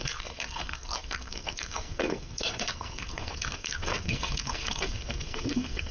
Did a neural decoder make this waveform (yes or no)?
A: yes